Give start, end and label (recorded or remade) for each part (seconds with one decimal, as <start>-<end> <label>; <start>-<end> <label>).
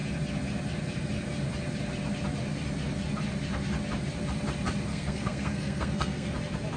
0.0-4.9 recorded; 4.9-6.3 remade; 6.3-6.8 recorded